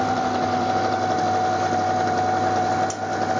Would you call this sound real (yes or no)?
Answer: yes